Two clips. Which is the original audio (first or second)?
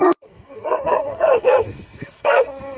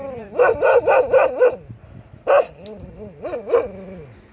second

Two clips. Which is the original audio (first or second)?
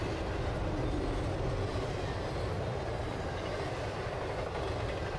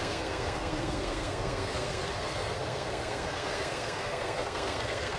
first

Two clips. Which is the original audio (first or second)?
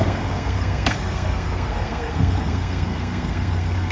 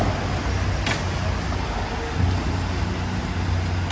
second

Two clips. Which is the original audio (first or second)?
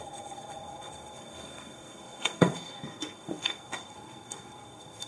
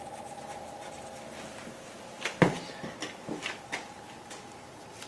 second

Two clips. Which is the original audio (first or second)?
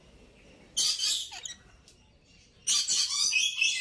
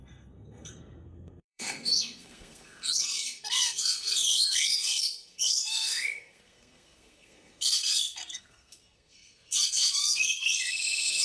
first